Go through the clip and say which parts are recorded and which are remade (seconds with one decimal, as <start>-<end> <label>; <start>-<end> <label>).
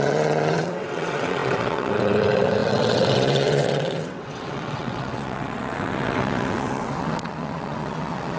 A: 0.0-8.4 remade